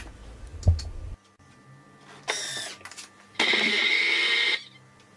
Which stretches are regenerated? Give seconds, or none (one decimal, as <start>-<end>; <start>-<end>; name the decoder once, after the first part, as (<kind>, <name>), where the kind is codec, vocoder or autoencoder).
3.8-4.3 (vocoder, Vocos)